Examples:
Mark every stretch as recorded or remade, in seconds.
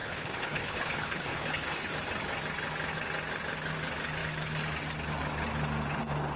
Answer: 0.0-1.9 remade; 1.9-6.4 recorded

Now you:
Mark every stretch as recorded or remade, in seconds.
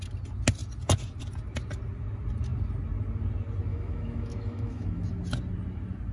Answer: 0.0-3.7 recorded; 3.7-5.1 remade; 5.1-6.1 recorded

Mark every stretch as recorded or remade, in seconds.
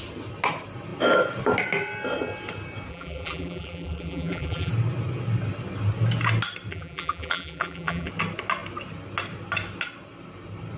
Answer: 0.0-2.9 recorded; 2.9-4.7 remade; 4.7-6.7 recorded; 6.7-8.1 remade; 8.1-10.8 recorded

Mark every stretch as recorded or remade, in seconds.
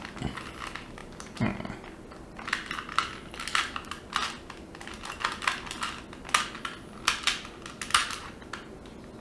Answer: 0.0-9.2 recorded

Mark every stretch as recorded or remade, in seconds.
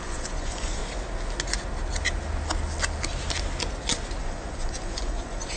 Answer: 0.0-0.8 remade; 0.8-4.2 recorded; 4.2-5.6 remade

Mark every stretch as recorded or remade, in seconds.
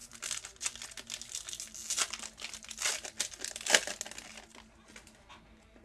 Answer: 0.0-5.8 recorded